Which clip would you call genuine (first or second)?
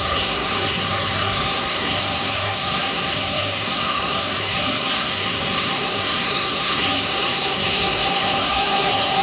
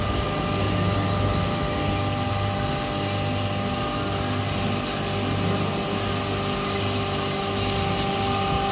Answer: second